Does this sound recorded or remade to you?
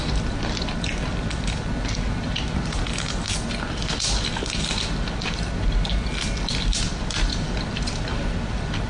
recorded